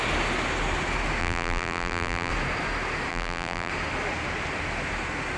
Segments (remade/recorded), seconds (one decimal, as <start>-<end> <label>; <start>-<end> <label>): 0.0-1.2 recorded; 1.2-2.3 remade; 2.3-3.1 recorded; 3.1-3.7 remade; 3.7-5.4 recorded